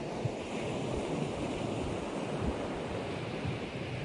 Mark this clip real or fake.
real